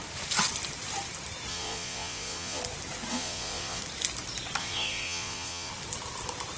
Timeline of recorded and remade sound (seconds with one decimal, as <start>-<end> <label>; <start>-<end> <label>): 0.0-1.5 recorded; 1.5-2.6 remade; 2.6-3.1 recorded; 3.1-3.8 remade; 3.8-4.6 recorded; 4.6-5.7 remade; 5.7-6.6 recorded